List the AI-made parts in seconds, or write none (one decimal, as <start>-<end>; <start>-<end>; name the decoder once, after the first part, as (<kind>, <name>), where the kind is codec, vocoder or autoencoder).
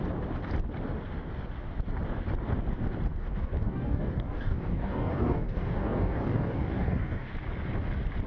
3.2-7.3 (codec, DAC)